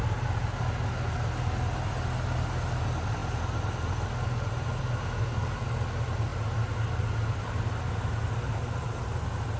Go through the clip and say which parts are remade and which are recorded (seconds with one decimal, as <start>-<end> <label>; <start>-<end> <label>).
0.0-9.6 recorded